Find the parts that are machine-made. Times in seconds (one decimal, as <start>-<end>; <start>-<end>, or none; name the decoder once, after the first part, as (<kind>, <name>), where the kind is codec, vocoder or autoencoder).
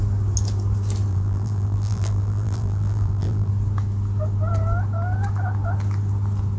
1.1-3.5 (vocoder, BigVGAN v2)